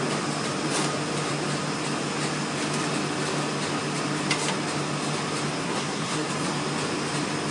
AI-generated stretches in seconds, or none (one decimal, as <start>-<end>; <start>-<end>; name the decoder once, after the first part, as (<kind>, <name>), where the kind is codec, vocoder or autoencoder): 5.6-6.3 (codec, SNAC)